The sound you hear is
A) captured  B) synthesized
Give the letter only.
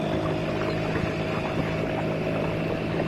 A